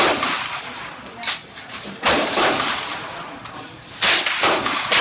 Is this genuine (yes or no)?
yes